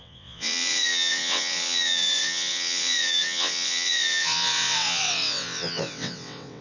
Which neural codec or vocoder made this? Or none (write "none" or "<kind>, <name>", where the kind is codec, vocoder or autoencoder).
vocoder, WaveNeXt